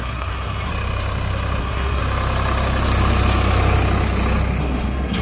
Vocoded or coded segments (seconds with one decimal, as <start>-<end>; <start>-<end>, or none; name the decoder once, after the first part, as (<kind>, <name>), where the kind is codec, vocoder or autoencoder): 0.0-0.7 (codec, SNAC); 1.6-2.0; 4.6-5.2